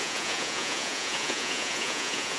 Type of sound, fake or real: fake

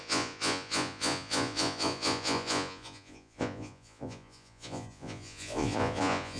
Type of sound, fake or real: fake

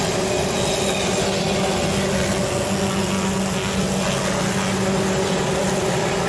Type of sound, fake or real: real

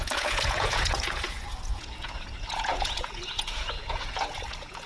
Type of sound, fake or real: fake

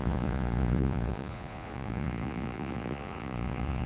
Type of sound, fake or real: fake